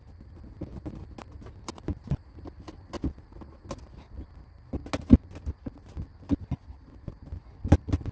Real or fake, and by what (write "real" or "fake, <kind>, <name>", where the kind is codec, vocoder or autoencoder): real